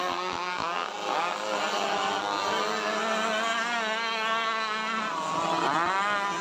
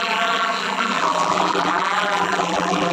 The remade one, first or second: second